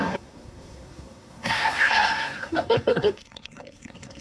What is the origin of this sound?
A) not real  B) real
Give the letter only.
A